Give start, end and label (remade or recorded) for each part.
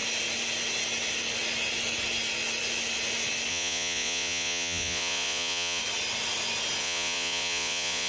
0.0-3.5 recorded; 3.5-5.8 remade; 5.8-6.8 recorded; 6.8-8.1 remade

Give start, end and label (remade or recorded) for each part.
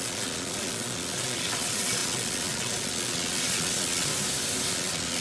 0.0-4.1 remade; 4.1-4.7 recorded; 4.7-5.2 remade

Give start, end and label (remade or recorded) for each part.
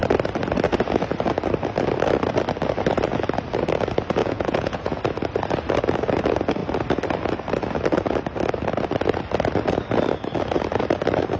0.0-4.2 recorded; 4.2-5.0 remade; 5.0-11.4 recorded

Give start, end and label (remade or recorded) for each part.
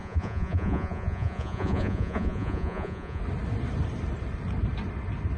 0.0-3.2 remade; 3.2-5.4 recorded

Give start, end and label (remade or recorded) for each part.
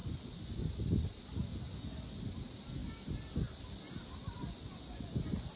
0.0-0.6 remade; 0.6-1.5 recorded; 1.5-2.2 remade; 2.2-4.4 recorded; 4.4-5.6 remade